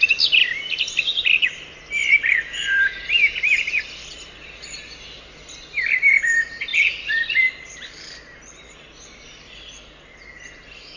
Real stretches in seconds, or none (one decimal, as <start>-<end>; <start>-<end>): 0.0-11.0